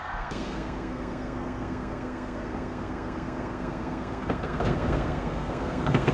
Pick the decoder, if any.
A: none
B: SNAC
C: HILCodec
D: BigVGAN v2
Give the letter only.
B